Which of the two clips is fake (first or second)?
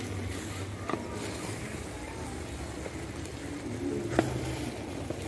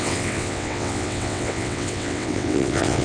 second